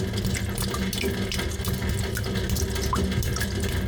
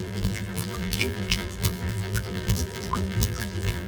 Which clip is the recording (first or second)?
first